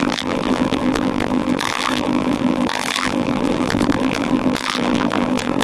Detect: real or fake fake